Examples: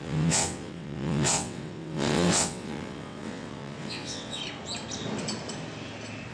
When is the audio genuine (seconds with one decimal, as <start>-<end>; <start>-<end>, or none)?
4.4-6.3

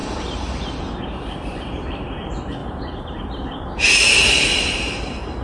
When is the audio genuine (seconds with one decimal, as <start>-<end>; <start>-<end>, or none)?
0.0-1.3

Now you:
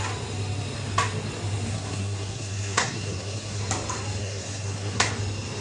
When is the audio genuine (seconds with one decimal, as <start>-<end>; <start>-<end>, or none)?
0.0-1.7; 3.6-4.2; 5.1-5.6

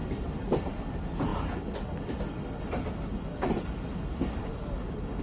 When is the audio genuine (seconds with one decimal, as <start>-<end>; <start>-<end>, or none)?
0.0-5.2

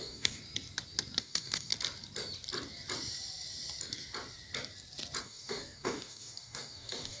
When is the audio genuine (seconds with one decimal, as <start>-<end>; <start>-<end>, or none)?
0.4-1.2; 1.7-5.2

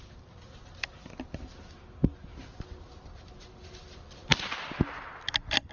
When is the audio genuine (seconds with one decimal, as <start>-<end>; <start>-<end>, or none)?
0.0-5.7

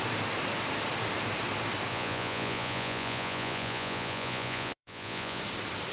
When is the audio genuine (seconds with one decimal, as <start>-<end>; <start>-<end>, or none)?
0.0-1.9; 5.4-5.9